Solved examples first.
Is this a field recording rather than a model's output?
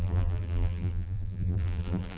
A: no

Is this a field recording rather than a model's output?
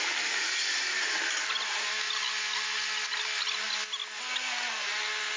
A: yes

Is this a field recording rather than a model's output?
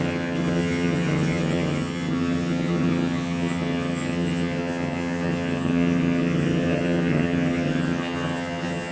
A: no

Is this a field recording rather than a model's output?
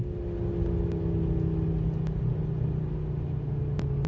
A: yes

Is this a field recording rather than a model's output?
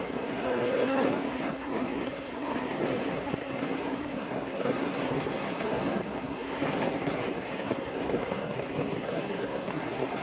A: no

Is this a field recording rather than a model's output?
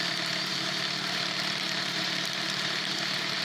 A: no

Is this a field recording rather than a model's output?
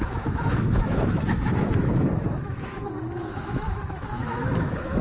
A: no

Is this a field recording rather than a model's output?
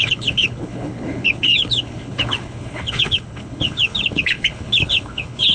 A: no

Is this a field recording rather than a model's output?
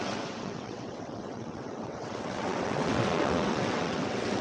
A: no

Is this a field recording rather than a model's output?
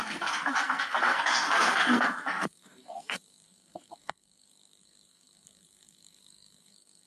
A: no